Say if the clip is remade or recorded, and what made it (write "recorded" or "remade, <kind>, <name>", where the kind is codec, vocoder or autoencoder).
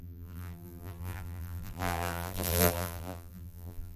remade, vocoder, BigVGAN v2